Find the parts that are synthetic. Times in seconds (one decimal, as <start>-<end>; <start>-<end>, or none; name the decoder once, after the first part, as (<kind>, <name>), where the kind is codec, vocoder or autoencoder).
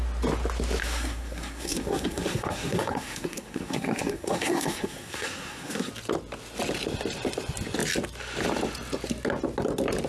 0.8-5.9 (codec, SNAC)